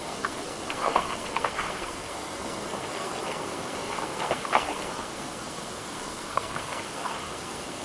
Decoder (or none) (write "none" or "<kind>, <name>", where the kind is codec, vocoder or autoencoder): codec, SNAC